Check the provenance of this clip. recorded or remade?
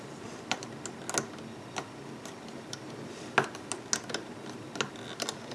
recorded